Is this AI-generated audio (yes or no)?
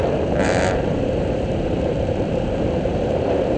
yes